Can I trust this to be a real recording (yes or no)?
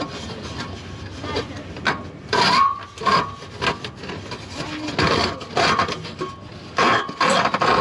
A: yes